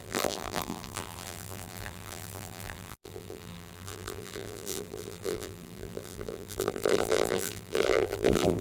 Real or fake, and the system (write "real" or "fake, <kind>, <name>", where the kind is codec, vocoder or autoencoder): fake, vocoder, BigVGAN v2